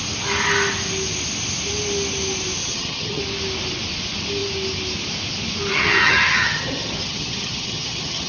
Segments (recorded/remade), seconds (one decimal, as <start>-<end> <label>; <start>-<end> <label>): 0.0-2.6 recorded; 2.6-3.2 remade; 3.2-5.7 recorded; 5.7-8.3 remade